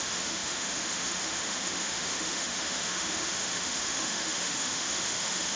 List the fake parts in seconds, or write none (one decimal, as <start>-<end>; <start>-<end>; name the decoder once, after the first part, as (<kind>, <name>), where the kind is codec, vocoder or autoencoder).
0.0-5.6 (autoencoder, DAC-VAE)